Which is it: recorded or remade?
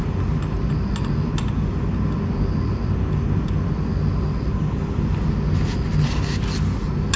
recorded